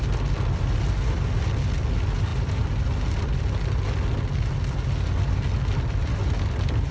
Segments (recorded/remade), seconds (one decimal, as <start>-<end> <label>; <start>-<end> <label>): 0.0-6.9 recorded